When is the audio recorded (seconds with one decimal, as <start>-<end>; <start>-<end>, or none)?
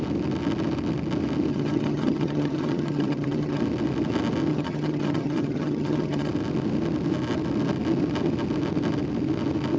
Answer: 0.0-1.5; 3.6-4.5; 6.3-9.8